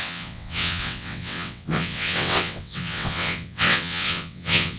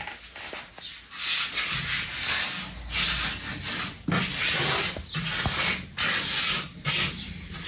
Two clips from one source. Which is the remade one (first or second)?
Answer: first